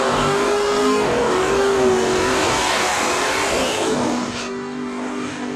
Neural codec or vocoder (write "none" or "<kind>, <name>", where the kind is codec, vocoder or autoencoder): codec, DAC